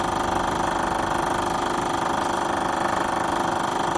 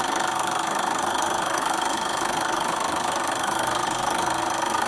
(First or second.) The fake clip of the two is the second